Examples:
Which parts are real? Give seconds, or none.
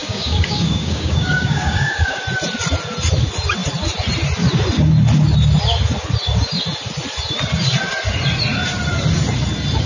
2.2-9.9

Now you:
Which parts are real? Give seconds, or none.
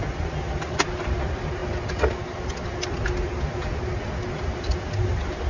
0.0-5.5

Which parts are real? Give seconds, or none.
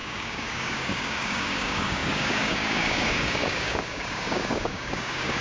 none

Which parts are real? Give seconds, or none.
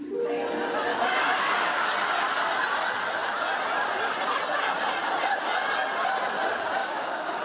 0.0-0.9; 1.9-6.8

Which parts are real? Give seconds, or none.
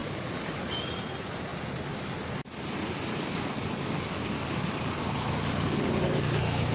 0.8-3.1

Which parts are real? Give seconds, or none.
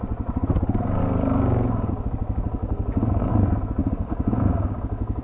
0.0-1.0; 1.9-2.6; 3.3-3.8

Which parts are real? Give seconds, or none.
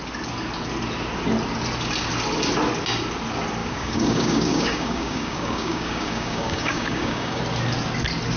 0.0-3.6; 7.4-8.4